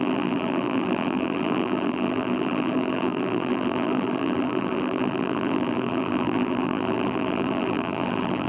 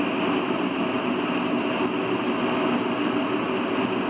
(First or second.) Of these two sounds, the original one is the second